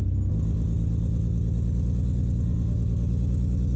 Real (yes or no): yes